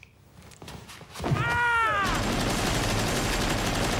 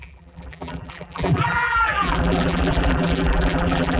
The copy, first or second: second